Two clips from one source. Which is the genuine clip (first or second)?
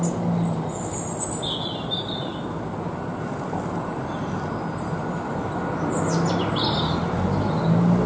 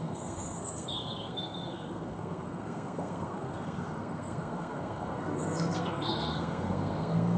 first